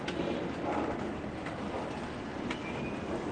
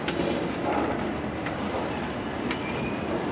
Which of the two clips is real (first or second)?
first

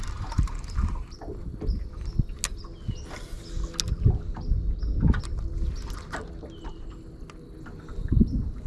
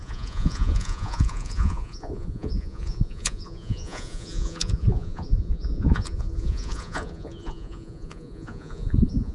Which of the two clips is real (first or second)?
first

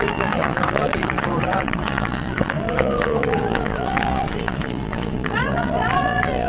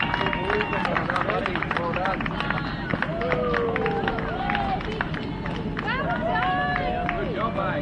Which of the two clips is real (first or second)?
second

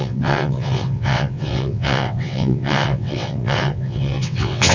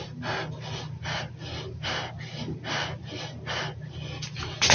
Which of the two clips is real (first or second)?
second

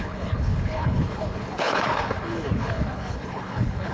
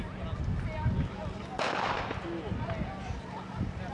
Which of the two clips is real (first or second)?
second